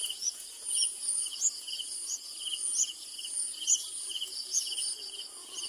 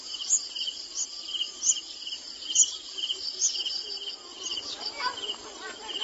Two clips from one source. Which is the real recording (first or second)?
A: second